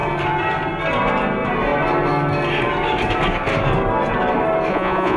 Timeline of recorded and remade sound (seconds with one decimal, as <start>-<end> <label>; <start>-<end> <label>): 0.0-4.7 recorded; 4.7-5.2 remade